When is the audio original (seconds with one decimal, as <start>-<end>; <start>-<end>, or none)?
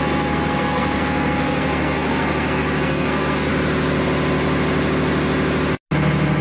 3.5-6.4